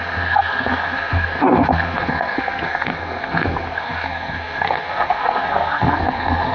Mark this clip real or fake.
fake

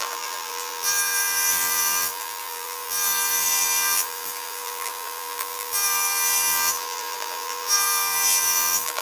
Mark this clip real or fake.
fake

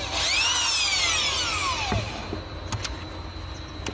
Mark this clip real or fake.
real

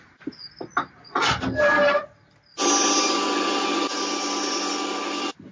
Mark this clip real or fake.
real